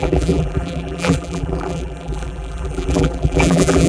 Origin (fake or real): fake